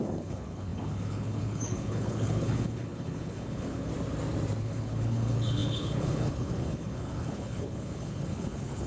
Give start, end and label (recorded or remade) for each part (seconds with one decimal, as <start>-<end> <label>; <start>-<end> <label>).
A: 0.0-3.9 remade; 3.9-4.6 recorded; 4.6-8.9 remade